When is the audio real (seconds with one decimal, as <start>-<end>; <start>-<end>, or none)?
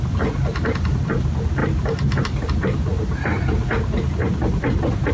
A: 0.0-5.1